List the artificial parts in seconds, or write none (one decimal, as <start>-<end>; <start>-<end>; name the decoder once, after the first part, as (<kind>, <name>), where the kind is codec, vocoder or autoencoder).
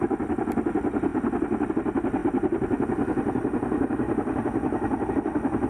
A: 2.2-5.1 (vocoder, BigVGAN v2)